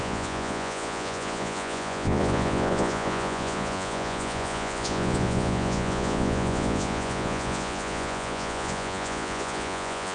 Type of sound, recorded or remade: remade